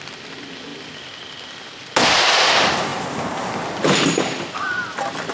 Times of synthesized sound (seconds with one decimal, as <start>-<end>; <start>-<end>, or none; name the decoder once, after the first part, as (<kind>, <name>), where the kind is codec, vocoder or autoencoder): 2.9-3.5 (vocoder, BigVGAN v2)